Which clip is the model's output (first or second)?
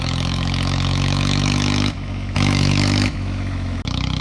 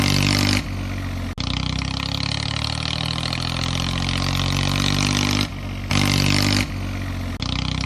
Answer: first